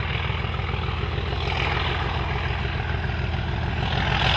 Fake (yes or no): no